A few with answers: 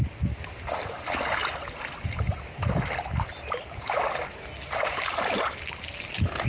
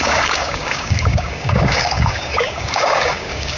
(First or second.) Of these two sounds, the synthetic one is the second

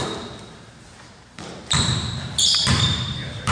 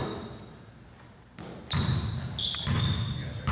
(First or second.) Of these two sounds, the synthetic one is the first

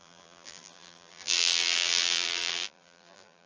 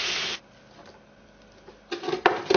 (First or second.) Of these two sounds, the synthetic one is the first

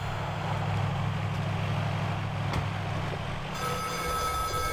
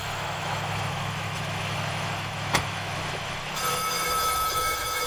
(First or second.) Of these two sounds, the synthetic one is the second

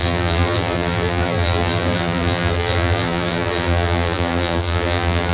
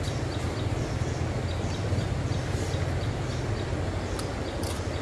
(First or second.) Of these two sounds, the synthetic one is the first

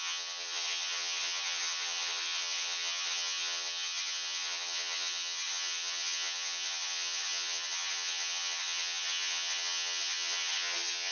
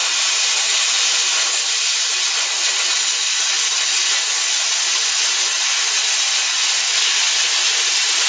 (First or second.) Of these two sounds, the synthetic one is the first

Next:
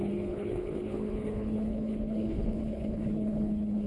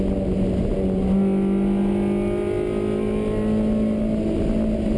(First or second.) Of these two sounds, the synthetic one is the first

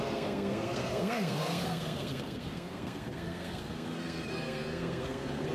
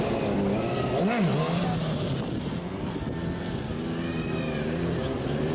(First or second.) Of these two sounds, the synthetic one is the first